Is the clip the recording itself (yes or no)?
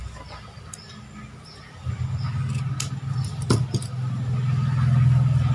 yes